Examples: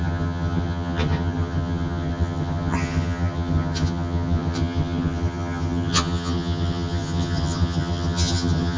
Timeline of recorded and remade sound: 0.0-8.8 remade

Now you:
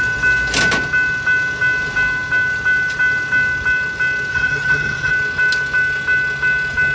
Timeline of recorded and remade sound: 0.0-4.3 recorded; 4.3-5.1 remade; 5.1-6.9 recorded

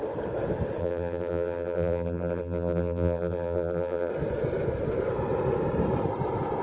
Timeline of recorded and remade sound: 0.0-0.8 recorded; 0.8-4.1 remade; 4.1-6.6 recorded

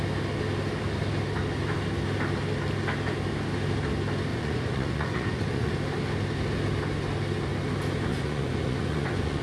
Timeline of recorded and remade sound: 0.0-4.3 recorded; 4.3-5.7 remade; 5.7-8.1 recorded; 8.1-9.4 remade

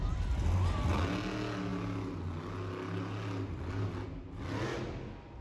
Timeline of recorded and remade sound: 0.0-5.4 recorded